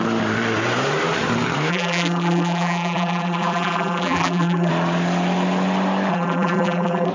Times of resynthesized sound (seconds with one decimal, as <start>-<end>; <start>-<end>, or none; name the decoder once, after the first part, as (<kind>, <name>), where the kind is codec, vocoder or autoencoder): 1.7-4.7 (vocoder, BigVGAN v2); 6.1-7.1